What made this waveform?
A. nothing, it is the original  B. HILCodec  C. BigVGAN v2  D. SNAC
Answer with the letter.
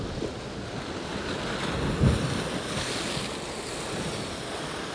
A